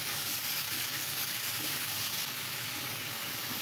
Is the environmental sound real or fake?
fake